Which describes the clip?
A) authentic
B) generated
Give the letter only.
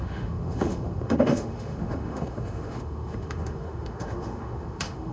B